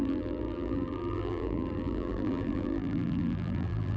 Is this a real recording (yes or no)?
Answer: no